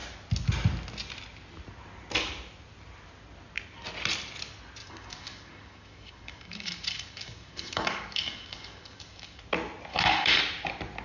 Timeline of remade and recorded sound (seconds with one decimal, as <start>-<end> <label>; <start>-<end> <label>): 0.0-4.8 recorded; 4.8-9.4 remade; 9.4-9.9 recorded; 9.9-10.4 remade; 10.4-11.0 recorded